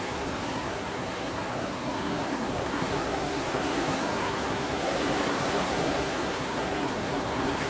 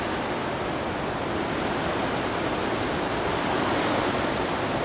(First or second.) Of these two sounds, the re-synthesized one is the first